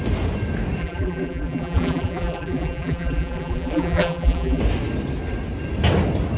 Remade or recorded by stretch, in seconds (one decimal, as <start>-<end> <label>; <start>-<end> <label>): 0.0-0.8 recorded; 0.8-4.6 remade; 4.6-6.4 recorded